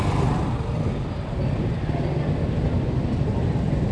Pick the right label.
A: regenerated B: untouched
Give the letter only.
B